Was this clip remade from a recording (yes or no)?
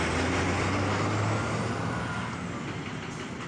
no